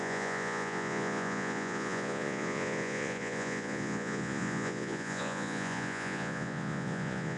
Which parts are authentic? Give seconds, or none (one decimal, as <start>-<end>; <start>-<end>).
none